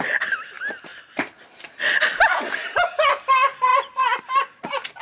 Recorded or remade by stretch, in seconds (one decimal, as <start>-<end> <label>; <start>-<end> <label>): 0.0-5.0 recorded